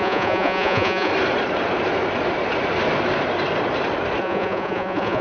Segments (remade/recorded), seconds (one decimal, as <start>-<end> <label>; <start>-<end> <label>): 0.0-1.1 remade; 1.1-4.2 recorded; 4.2-5.2 remade